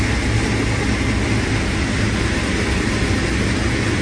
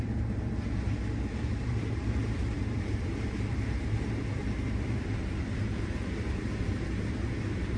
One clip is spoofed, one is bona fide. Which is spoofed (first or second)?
second